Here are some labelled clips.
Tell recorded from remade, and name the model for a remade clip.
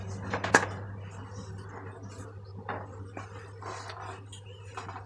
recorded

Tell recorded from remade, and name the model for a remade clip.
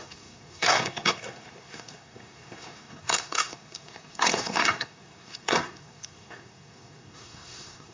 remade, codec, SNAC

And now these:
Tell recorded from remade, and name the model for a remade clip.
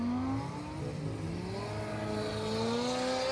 recorded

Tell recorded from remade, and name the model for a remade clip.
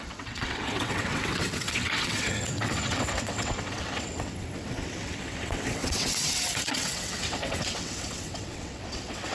remade, vocoder, WaveNeXt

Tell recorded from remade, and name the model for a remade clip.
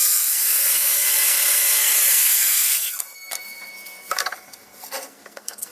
remade, codec, SNAC